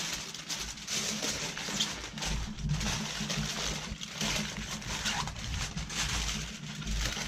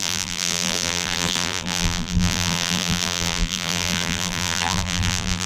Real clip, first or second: first